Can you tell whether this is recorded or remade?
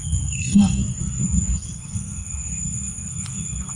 remade